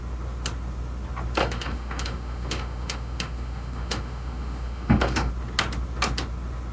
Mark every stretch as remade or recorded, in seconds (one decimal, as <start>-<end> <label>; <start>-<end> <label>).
0.0-1.4 recorded; 1.4-5.3 remade; 5.3-6.7 recorded